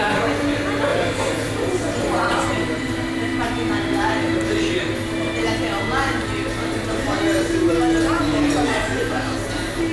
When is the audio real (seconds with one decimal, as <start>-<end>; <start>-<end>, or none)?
0.0-9.9